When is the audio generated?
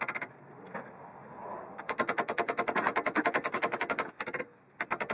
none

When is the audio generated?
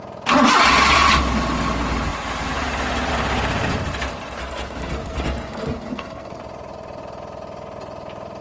4.4-6.4 (codec, SNAC)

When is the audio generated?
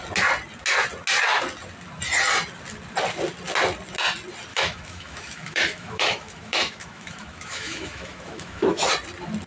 4.5-8.9 (autoencoder, DAC-VAE)